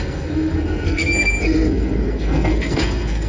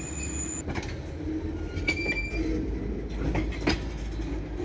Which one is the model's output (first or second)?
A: first